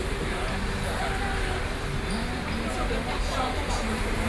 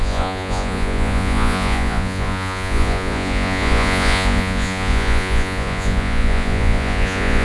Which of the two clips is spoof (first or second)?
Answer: second